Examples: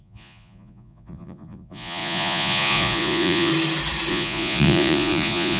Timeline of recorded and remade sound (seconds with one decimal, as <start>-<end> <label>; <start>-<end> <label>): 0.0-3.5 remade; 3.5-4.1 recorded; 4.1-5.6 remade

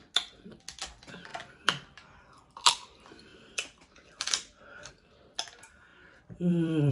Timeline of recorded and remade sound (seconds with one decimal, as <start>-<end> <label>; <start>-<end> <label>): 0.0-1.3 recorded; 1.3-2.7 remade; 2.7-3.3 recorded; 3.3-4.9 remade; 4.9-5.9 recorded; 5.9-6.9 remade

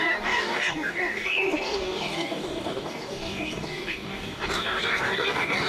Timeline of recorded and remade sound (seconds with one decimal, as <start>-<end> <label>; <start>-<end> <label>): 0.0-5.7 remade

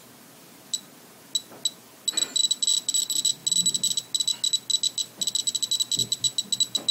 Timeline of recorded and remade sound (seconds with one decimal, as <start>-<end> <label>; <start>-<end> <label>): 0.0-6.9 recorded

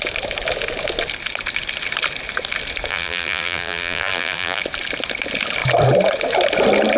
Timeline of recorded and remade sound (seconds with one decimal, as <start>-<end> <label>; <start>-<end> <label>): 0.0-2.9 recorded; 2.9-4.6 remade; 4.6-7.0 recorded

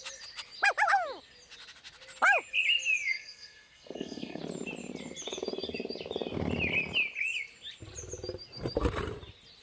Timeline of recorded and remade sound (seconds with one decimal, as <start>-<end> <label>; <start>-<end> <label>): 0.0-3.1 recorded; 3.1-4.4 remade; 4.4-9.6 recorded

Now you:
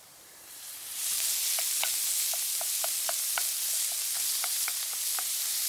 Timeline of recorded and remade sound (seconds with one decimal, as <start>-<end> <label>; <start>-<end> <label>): 0.0-1.4 remade; 1.4-4.3 recorded; 4.3-5.7 remade